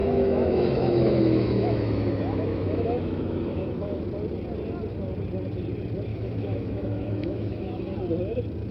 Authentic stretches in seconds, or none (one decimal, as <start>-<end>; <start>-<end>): 4.0-6.1; 7.8-8.7